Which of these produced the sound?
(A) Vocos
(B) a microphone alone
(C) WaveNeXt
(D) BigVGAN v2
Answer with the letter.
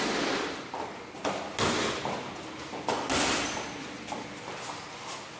B